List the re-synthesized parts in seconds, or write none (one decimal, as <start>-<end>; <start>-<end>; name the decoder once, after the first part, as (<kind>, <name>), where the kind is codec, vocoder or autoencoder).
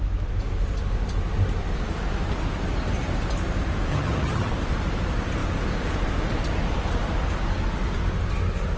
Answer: 3.9-4.5 (vocoder, HiFi-GAN)